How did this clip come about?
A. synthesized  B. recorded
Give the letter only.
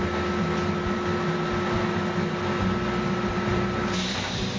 B